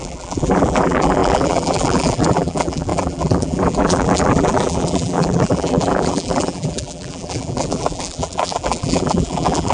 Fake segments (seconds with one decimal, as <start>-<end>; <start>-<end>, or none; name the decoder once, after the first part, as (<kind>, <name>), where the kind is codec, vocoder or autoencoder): 0.0-9.7 (vocoder, BigVGAN v2)

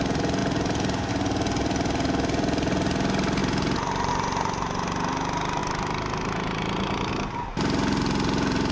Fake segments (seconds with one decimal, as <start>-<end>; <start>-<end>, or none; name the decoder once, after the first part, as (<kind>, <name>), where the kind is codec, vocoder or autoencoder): 3.4-4.1 (vocoder, BigVGAN v2)

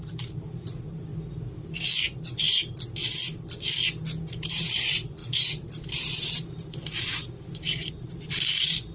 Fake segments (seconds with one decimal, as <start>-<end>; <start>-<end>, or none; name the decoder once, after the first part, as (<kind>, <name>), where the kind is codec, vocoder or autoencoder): 0.0-1.1 (vocoder, BigVGAN v2); 2.4-3.1; 4.5-8.9

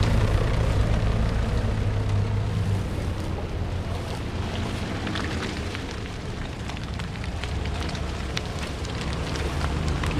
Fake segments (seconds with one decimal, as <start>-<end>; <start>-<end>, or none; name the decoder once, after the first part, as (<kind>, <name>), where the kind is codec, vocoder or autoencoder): 0.0-0.8 (vocoder, BigVGAN v2); 5.3-10.2

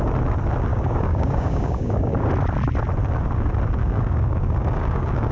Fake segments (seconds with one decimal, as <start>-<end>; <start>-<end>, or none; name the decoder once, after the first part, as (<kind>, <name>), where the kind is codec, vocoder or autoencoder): 0.7-2.3 (codec, DAC); 3.8-5.3